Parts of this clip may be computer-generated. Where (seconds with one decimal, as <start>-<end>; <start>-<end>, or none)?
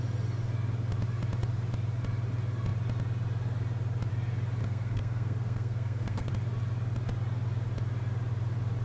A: 4.6-6.3